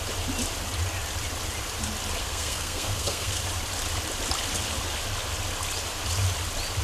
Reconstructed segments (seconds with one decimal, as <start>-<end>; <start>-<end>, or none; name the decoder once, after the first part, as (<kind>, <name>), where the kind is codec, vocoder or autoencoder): 2.2-3.4 (codec, SNAC)